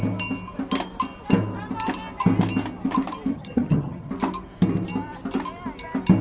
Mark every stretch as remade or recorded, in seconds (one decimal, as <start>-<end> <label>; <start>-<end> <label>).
0.0-3.3 recorded; 3.3-4.1 remade; 4.1-6.2 recorded